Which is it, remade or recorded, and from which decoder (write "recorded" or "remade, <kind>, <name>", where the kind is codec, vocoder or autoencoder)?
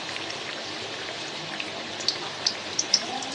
remade, vocoder, BigVGAN v2